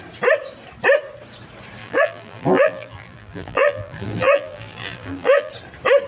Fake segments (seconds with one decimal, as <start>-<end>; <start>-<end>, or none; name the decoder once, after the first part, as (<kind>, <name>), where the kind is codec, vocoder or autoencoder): 1.8-5.5 (vocoder, BigVGAN v2)